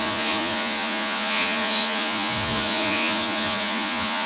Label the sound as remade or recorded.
remade